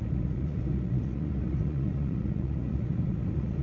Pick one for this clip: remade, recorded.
remade